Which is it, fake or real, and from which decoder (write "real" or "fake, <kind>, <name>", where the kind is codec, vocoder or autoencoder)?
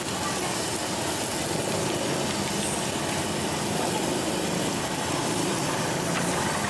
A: real